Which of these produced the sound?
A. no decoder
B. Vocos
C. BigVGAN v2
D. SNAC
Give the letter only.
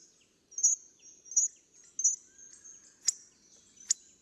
A